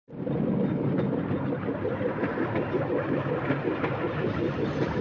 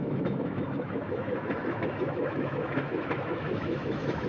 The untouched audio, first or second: first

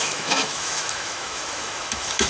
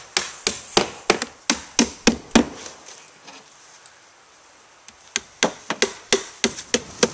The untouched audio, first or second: second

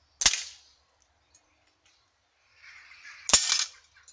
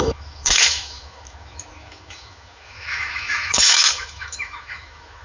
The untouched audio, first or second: first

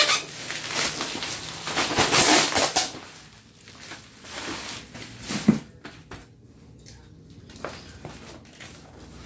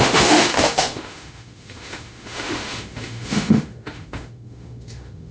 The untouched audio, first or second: first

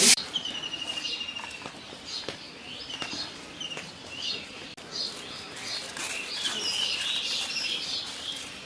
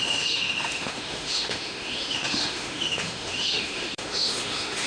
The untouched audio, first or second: first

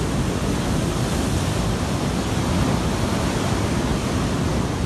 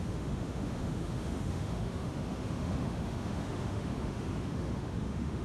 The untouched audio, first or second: first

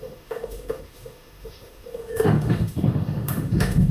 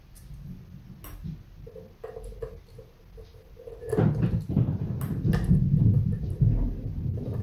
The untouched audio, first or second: second